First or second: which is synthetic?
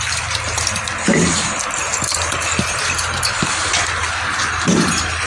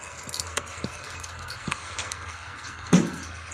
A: second